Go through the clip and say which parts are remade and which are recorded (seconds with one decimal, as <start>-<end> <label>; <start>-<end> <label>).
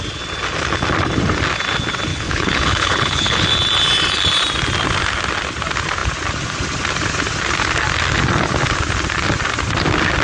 0.0-2.1 recorded; 2.1-3.5 remade; 3.5-10.2 recorded